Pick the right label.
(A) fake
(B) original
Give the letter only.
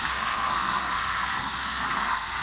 A